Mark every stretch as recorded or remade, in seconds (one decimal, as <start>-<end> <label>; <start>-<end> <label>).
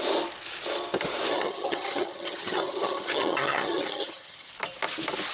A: 0.0-1.3 recorded; 1.3-4.5 remade; 4.5-5.3 recorded